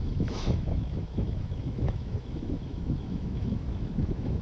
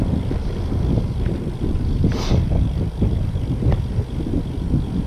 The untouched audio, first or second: second